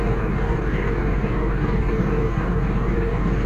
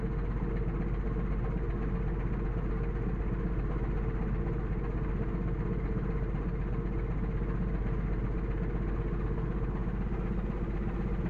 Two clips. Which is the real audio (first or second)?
second